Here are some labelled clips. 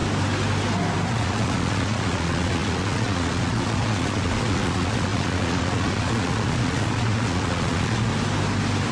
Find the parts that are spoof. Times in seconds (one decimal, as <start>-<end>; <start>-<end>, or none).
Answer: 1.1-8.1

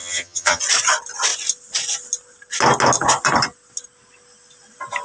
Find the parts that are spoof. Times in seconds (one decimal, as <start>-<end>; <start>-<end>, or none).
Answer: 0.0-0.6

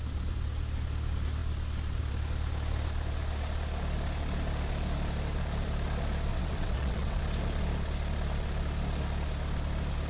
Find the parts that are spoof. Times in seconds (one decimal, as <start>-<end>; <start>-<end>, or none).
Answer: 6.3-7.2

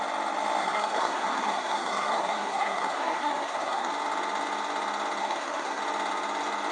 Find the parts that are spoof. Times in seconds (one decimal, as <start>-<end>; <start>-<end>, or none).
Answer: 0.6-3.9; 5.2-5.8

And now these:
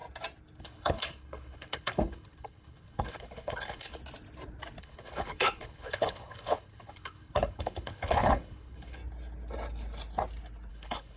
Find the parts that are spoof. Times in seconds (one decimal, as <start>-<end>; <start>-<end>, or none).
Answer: 0.6-4.0; 4.8-9.0; 10.7-11.2

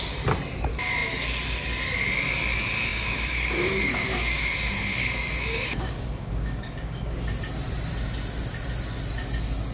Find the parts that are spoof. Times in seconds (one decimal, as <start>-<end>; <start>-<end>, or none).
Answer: 2.9-7.2

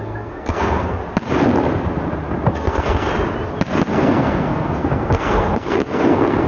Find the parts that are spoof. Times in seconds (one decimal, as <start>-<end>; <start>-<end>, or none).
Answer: 0.0-1.0; 2.5-3.1; 3.9-6.5

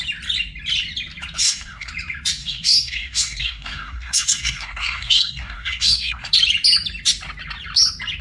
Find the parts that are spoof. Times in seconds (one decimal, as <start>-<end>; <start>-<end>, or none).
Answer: 1.4-1.9; 2.4-6.3